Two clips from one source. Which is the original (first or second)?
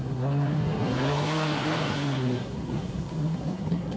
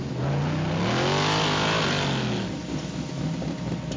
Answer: second